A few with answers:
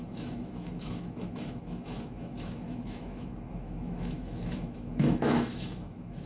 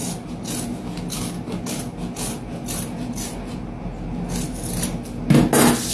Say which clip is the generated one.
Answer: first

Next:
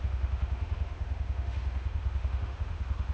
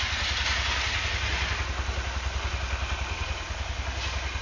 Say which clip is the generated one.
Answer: first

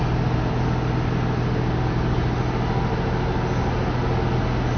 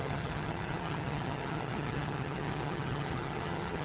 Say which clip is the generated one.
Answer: second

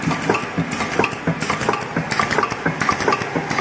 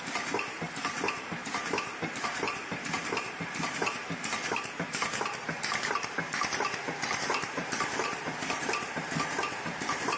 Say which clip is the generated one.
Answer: second